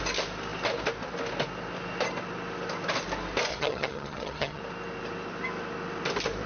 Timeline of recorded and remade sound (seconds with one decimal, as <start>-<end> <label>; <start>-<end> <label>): 0.0-3.5 recorded; 3.5-4.6 remade; 4.6-6.5 recorded